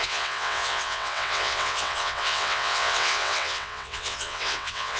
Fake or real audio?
fake